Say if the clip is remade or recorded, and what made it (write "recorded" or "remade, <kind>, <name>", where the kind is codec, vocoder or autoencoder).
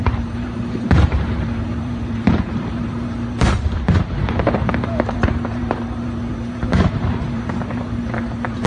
remade, vocoder, BigVGAN v2